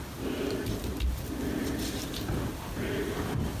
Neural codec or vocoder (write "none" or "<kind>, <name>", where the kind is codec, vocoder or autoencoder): none